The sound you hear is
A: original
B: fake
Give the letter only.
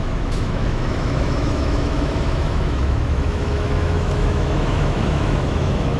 B